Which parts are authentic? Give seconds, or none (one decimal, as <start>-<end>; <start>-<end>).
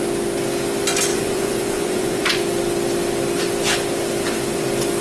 0.0-1.1; 2.4-5.0